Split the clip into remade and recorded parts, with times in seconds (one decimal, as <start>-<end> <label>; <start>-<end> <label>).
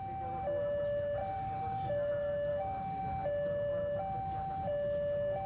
0.0-1.2 recorded; 1.2-2.1 remade; 2.1-2.5 recorded; 2.5-3.0 remade; 3.0-5.5 recorded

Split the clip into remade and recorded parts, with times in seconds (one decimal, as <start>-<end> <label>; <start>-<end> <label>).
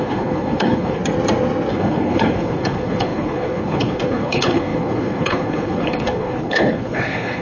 0.0-1.0 remade; 1.0-1.7 recorded; 1.7-7.4 remade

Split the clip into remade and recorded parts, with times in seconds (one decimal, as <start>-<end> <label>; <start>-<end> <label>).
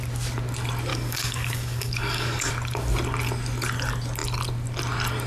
0.0-0.9 recorded; 0.9-2.5 remade; 2.5-5.3 recorded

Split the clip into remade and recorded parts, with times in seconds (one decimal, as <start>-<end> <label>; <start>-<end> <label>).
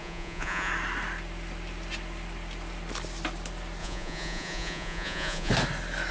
0.0-0.7 remade; 0.7-3.8 recorded; 3.8-5.5 remade; 5.5-6.1 recorded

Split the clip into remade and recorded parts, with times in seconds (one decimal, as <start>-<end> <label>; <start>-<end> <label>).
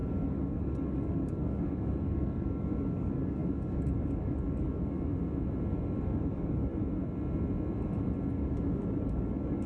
0.0-5.1 remade; 5.1-6.0 recorded; 6.0-6.7 remade; 6.7-8.3 recorded; 8.3-9.7 remade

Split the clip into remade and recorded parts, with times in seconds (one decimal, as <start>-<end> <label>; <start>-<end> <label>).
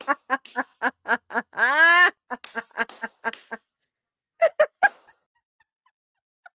0.0-6.5 recorded